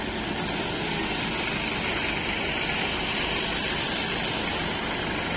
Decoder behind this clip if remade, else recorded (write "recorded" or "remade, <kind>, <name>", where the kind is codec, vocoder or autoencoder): recorded